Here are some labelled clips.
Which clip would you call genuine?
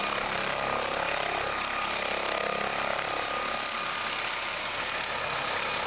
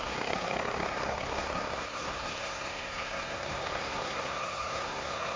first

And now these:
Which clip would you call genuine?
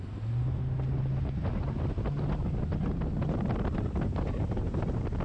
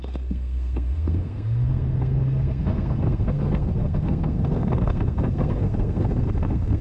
first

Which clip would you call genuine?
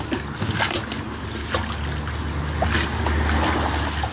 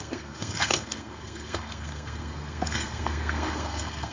first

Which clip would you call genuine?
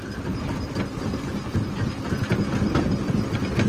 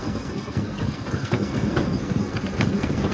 first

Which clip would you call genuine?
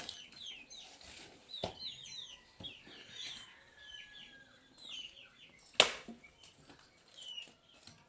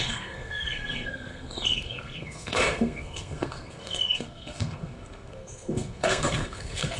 first